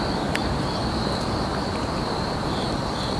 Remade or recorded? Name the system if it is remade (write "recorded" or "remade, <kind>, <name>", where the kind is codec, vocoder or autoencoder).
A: remade, vocoder, BigVGAN v2